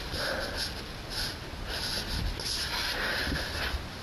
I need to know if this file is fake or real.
real